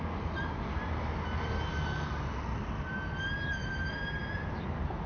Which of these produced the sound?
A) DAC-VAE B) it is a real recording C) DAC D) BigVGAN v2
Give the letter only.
B